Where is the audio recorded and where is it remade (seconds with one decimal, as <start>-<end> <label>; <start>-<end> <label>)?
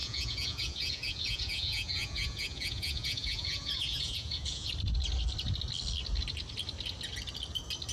0.0-4.7 remade; 4.7-7.9 recorded